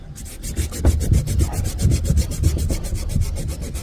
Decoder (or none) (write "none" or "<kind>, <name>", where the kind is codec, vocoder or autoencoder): none